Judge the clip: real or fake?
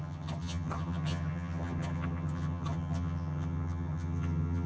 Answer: fake